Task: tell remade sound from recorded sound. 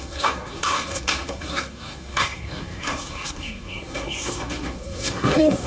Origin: remade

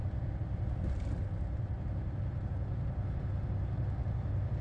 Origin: recorded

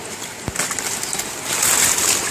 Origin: recorded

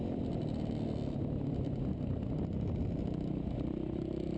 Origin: recorded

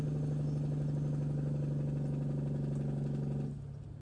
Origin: recorded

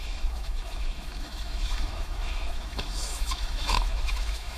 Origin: remade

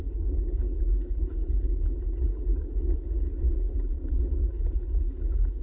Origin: remade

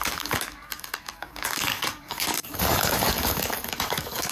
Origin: remade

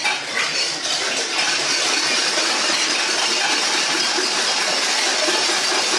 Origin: recorded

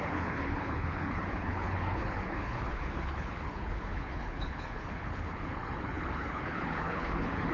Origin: remade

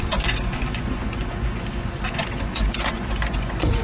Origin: remade